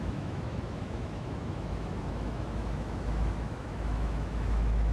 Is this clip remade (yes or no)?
yes